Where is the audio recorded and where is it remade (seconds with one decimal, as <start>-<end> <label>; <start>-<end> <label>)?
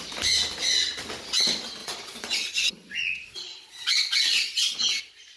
0.0-1.8 recorded; 1.8-5.0 remade; 5.0-5.4 recorded